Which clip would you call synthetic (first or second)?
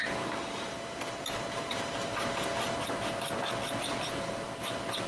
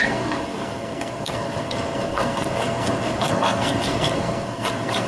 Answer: second